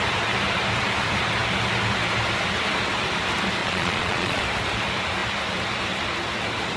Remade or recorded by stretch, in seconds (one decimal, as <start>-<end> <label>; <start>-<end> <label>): 0.0-3.6 recorded; 3.6-4.4 remade; 4.4-6.8 recorded